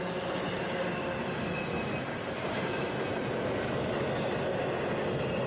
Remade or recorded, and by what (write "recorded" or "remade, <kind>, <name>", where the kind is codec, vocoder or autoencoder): recorded